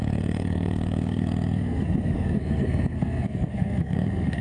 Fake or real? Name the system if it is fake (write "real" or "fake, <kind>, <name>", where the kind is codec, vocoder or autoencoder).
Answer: fake, codec, SNAC